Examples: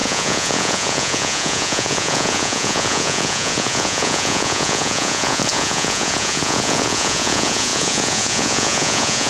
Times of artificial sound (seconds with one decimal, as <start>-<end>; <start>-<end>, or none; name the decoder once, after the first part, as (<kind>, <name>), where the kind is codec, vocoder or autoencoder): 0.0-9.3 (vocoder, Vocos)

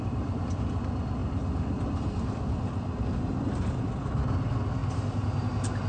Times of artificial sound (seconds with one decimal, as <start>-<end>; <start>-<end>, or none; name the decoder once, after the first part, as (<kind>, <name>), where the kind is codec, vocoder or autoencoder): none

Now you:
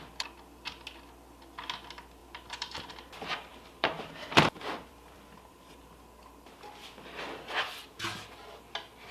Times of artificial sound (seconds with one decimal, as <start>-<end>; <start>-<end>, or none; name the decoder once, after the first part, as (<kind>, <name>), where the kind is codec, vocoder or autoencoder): 2.2-3.1 (vocoder, BigVGAN v2); 3.5-6.0

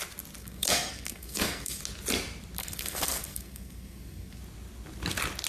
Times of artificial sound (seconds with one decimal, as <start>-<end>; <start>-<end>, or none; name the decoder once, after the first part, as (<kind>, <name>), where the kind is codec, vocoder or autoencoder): 0.4-1.8 (codec, SNAC); 2.6-4.4